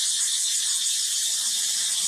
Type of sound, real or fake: real